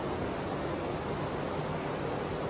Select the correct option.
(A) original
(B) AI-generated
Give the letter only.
A